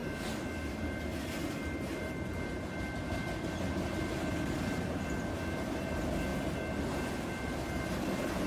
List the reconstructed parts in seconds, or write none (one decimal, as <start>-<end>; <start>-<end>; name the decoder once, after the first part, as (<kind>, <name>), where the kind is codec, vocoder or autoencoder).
none